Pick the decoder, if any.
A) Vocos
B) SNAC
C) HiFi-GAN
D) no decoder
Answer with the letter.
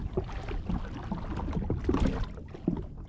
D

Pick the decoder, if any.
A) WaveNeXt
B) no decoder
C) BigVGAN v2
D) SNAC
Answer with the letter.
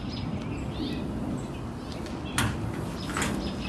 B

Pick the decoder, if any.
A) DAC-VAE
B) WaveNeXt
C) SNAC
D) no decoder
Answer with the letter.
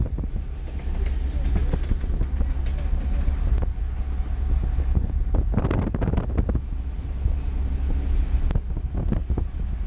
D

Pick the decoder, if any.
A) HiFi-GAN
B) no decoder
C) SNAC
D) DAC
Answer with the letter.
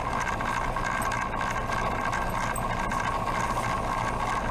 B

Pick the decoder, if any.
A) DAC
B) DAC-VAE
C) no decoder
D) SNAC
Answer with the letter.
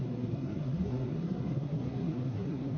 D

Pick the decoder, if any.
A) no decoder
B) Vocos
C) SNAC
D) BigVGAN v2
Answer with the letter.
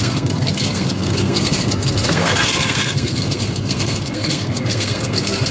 C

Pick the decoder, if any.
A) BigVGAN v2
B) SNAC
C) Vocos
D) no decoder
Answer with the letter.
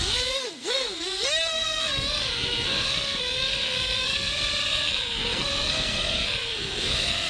B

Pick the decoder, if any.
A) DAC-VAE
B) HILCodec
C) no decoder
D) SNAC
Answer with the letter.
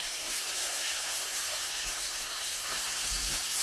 D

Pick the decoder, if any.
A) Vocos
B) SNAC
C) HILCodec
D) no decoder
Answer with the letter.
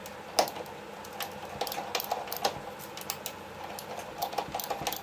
D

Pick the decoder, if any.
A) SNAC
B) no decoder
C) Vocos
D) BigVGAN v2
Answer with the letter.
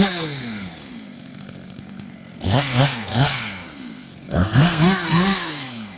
A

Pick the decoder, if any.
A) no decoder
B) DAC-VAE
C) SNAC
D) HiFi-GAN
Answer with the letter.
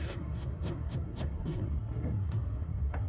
C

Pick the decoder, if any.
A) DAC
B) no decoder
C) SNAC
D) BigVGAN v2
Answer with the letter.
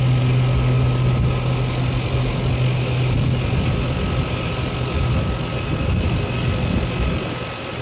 B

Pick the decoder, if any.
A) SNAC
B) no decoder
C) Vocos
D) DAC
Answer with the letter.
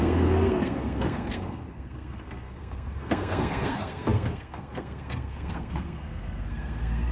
A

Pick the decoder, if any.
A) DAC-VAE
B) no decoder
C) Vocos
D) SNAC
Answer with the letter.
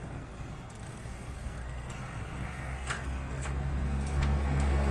D